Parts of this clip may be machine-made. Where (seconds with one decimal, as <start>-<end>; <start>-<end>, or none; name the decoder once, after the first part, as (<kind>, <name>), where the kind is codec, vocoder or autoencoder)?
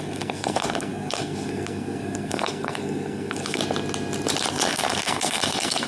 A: 0.0-3.6 (codec, SNAC); 4.5-5.9